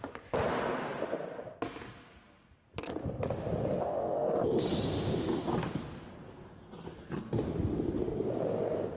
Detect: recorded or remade recorded